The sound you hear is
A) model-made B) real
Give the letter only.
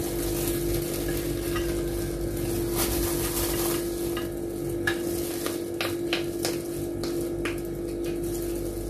B